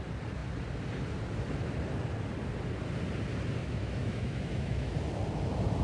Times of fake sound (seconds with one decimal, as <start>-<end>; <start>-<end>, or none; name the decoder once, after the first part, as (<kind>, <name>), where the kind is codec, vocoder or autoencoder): 3.6-4.9 (autoencoder, DAC-VAE)